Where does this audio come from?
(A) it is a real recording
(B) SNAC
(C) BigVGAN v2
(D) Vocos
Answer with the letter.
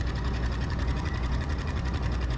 D